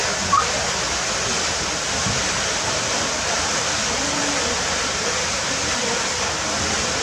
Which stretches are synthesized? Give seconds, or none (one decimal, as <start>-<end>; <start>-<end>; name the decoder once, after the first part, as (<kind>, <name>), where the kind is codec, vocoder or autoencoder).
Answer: none